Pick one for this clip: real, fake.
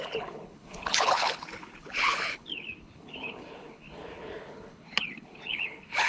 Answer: fake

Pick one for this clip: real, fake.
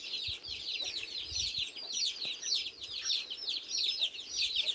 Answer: real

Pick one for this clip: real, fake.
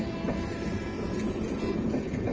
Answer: fake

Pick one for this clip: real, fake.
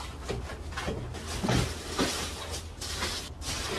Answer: real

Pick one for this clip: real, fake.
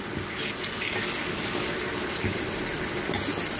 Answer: real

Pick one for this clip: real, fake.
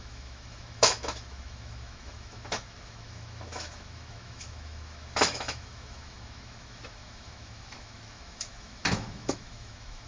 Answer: fake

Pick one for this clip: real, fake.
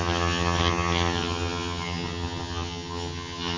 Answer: fake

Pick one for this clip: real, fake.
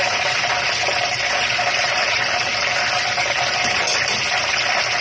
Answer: fake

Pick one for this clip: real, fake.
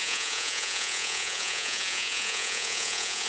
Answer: fake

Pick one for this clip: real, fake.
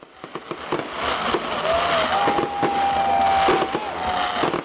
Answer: real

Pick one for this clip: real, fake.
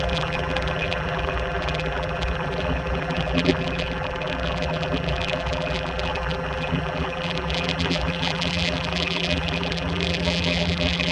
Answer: fake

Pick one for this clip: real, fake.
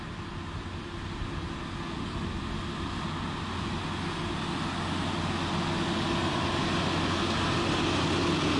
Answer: real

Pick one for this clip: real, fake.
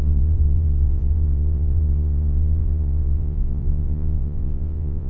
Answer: fake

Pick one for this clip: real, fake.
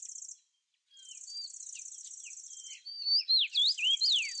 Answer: real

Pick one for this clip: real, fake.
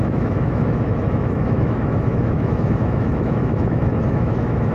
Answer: fake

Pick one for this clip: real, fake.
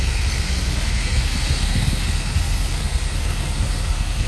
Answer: fake